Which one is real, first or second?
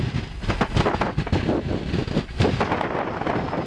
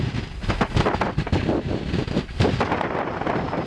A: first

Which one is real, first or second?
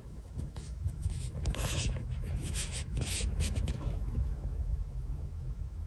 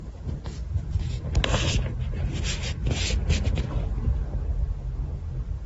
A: second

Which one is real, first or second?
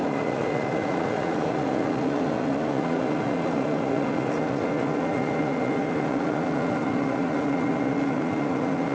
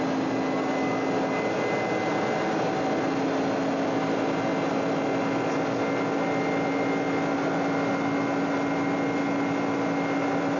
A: second